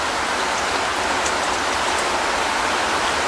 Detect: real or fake real